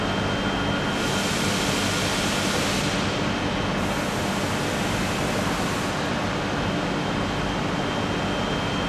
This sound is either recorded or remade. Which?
recorded